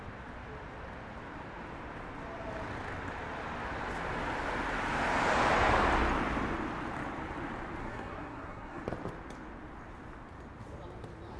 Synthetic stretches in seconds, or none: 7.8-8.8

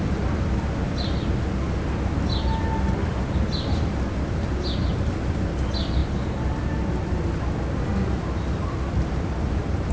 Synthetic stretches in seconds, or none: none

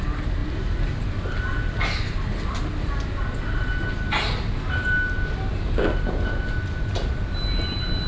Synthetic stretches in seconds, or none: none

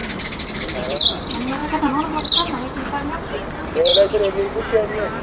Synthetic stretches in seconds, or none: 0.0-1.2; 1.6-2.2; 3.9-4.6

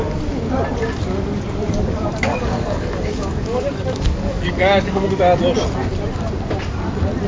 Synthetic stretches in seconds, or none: 0.8-5.1

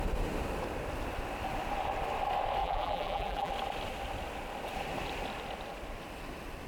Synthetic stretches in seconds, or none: 2.6-3.5